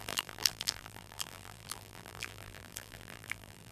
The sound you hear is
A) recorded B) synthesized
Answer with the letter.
B